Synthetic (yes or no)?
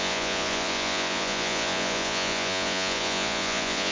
yes